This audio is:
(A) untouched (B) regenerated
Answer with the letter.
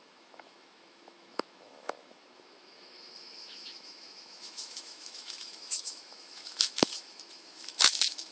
B